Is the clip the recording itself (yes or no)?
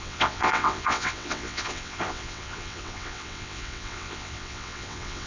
no